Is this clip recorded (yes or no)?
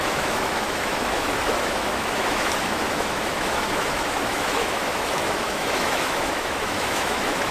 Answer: no